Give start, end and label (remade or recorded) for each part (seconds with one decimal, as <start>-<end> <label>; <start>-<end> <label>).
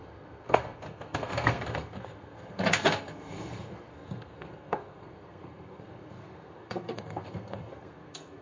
0.0-8.4 remade